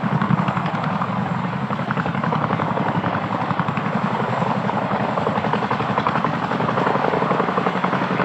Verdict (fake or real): fake